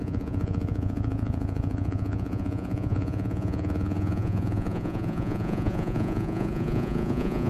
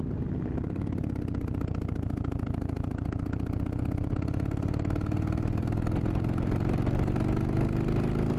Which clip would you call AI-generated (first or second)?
first